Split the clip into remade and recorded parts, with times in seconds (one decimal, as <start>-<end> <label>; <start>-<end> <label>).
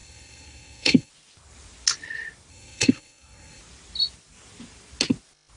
0.0-1.1 remade; 1.1-2.5 recorded; 2.5-3.6 remade; 3.6-5.6 recorded